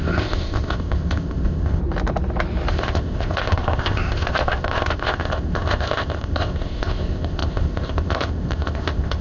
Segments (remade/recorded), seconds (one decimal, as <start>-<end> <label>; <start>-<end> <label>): 0.0-1.8 remade; 1.8-2.7 recorded; 2.7-9.2 remade